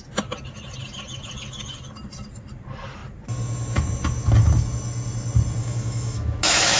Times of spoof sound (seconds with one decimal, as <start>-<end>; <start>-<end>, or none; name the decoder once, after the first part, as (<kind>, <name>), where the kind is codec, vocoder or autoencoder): 5.6-6.8 (autoencoder, DAC-VAE)